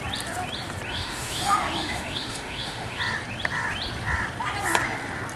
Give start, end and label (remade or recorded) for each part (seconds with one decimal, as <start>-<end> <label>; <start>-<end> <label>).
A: 0.0-0.9 recorded; 0.9-3.0 remade; 3.0-5.4 recorded